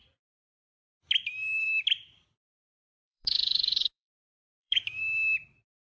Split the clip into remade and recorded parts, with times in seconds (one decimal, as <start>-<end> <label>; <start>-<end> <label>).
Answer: 0.0-2.8 recorded; 2.8-5.0 remade; 5.0-5.9 recorded